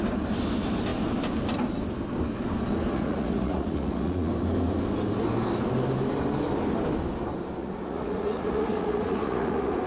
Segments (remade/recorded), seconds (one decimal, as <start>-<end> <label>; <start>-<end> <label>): 0.0-2.9 recorded; 2.9-4.3 remade; 4.3-7.6 recorded; 7.6-9.9 remade

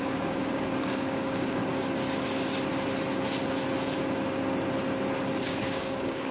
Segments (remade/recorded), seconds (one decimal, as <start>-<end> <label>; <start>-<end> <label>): 0.0-1.6 remade; 1.6-5.4 recorded; 5.4-6.3 remade

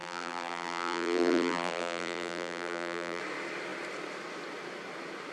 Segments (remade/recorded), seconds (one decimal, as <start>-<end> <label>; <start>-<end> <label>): 0.0-3.2 remade; 3.2-5.3 recorded

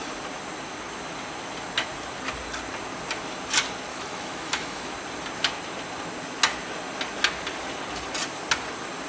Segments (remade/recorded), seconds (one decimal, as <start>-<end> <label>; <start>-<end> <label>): 0.0-3.9 recorded; 3.9-4.9 remade; 4.9-9.1 recorded